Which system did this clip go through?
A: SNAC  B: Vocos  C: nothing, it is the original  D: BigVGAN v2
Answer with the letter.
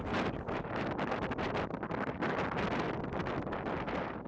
C